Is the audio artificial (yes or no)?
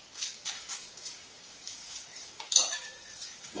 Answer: yes